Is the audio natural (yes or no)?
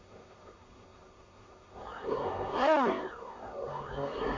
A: no